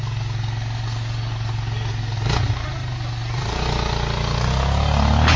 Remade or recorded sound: recorded